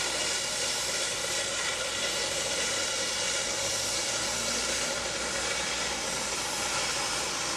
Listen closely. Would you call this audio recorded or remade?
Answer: recorded